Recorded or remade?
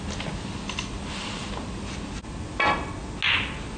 recorded